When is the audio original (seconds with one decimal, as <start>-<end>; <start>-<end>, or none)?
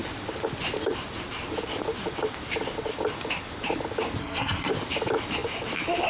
0.0-4.2; 4.7-6.1